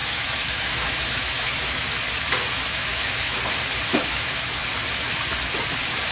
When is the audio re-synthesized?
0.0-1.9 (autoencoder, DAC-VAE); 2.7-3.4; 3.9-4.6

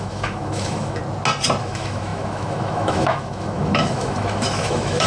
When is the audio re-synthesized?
0.0-1.0 (autoencoder, DAC-VAE); 1.6-5.1

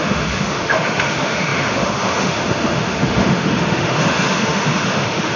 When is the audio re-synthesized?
0.0-5.4 (autoencoder, DAC-VAE)

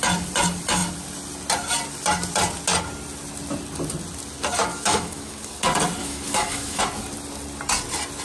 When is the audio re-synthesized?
4.7-5.6 (autoencoder, DAC-VAE); 6.0-6.8

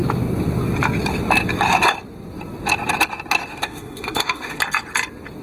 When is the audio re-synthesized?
3.5-4.6 (autoencoder, DAC-VAE)

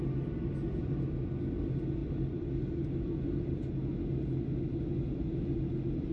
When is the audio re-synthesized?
none